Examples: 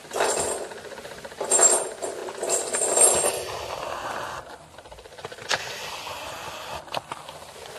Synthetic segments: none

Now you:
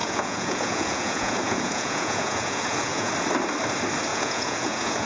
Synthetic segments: 0.0-3.1; 4.1-5.1

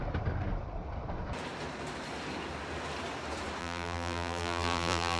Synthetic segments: 3.6-5.2